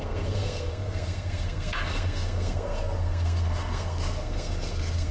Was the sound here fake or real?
fake